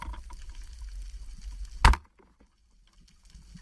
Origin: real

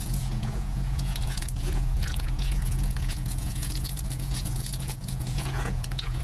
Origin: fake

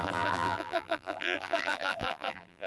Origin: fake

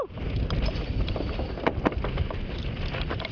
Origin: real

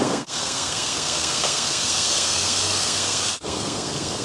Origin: fake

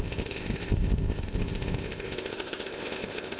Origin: fake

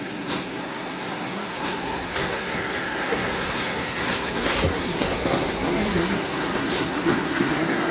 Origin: fake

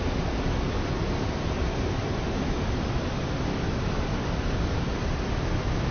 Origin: real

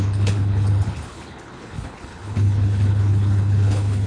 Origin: fake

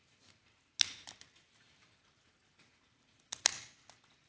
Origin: real